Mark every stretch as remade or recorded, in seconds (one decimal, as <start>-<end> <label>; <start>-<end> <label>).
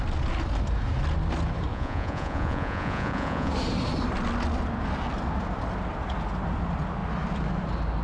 0.0-1.7 recorded; 1.7-3.5 remade; 3.5-8.0 recorded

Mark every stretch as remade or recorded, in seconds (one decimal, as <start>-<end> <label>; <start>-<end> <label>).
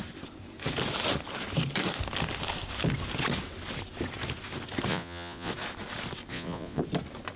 0.0-4.9 recorded; 4.9-5.5 remade; 5.5-6.3 recorded; 6.3-6.8 remade; 6.8-7.4 recorded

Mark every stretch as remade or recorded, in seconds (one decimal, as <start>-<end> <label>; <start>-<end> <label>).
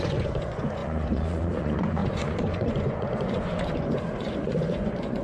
0.0-5.2 remade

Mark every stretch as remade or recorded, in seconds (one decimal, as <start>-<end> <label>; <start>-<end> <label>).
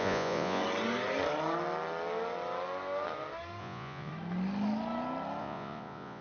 0.0-0.6 remade; 0.6-3.6 recorded; 3.6-4.1 remade; 4.1-5.4 recorded; 5.4-6.2 remade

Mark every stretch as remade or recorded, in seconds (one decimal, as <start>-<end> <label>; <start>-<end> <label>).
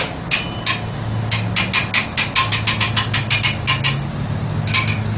0.0-5.2 recorded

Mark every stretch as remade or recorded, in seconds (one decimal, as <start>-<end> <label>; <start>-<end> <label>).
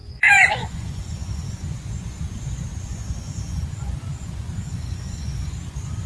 0.0-6.1 remade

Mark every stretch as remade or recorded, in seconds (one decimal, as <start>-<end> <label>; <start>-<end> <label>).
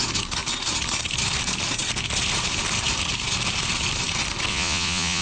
0.0-4.5 recorded; 4.5-5.2 remade